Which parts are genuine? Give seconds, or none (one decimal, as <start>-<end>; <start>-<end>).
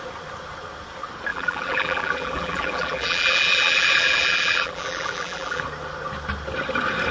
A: 0.0-1.3; 5.6-7.1